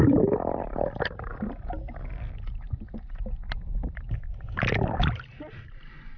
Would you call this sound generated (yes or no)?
no